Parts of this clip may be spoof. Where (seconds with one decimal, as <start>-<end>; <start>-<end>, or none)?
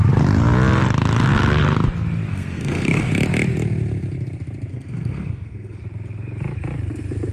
2.3-3.1; 4.7-5.8